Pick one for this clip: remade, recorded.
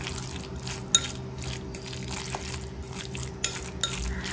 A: recorded